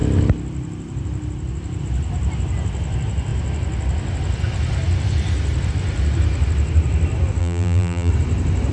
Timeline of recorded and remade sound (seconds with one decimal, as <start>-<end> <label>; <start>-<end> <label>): 0.0-7.4 recorded; 7.4-8.1 remade; 8.1-8.7 recorded